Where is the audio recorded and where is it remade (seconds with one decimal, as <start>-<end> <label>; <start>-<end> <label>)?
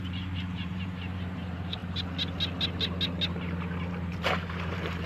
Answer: 0.0-1.8 remade; 1.8-3.9 recorded; 3.9-5.1 remade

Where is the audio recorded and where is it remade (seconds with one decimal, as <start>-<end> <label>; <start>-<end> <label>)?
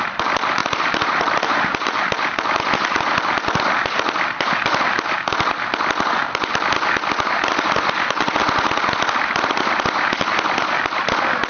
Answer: 0.0-0.6 recorded; 0.6-2.0 remade; 2.0-11.5 recorded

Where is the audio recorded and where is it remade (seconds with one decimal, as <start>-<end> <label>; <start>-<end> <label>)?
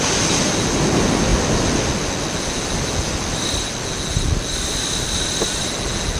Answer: 0.0-6.2 recorded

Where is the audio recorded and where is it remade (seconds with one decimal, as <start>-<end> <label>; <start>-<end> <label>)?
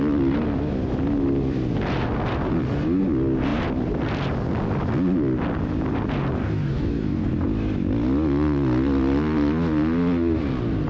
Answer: 0.0-6.4 recorded; 6.4-7.3 remade; 7.3-10.9 recorded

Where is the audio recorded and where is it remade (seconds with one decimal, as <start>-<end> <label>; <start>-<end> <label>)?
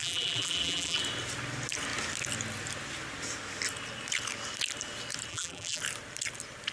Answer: 0.0-1.0 remade; 1.0-5.3 recorded; 5.3-5.8 remade; 5.8-6.7 recorded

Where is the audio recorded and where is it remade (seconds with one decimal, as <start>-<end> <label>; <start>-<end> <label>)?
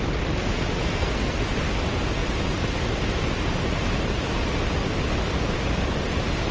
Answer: 0.0-0.8 recorded; 0.8-1.4 remade; 1.4-6.5 recorded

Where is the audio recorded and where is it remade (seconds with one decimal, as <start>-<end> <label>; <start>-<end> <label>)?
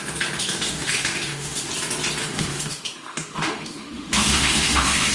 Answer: 0.0-0.4 recorded; 0.4-1.7 remade; 1.7-2.2 recorded; 2.2-5.1 remade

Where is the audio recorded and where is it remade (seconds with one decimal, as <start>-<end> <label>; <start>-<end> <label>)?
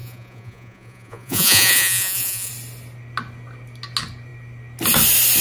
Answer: 0.0-2.5 remade; 2.5-5.4 recorded